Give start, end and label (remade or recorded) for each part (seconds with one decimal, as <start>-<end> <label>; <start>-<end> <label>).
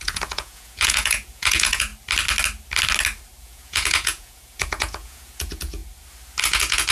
0.0-1.9 remade; 1.9-3.4 recorded; 3.4-5.8 remade; 5.8-6.4 recorded; 6.4-6.9 remade